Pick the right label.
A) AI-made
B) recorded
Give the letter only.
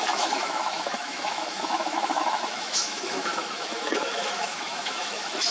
A